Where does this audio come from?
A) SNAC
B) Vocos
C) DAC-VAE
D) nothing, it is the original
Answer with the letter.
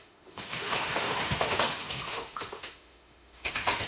C